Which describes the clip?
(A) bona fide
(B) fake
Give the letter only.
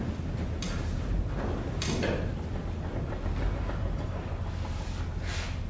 A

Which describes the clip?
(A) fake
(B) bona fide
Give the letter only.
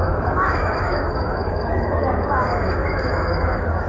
A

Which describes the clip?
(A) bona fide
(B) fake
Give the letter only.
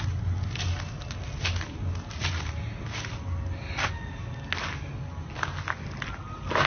A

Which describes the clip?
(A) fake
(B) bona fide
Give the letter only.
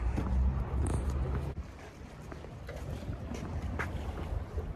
B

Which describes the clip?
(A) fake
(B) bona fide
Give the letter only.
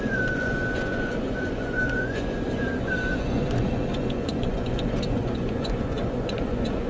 A